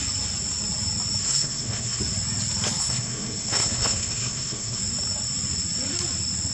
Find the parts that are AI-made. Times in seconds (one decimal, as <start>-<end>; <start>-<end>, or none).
1.2-2.0; 2.8-4.8